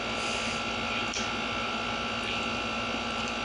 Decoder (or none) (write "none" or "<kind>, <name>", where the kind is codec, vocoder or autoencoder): none